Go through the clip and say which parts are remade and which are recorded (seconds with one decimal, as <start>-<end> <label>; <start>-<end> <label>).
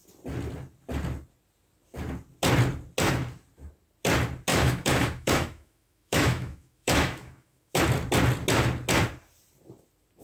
0.0-4.5 recorded; 4.5-7.8 remade; 7.8-10.2 recorded